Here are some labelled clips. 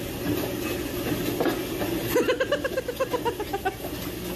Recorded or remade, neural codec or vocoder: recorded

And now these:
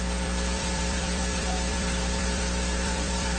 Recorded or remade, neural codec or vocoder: remade, vocoder, BigVGAN v2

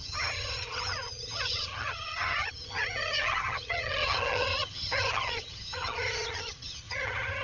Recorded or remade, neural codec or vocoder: remade, vocoder, HiFi-GAN